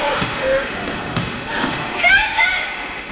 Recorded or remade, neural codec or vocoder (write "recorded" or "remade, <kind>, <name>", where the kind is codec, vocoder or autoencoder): remade, autoencoder, DAC-VAE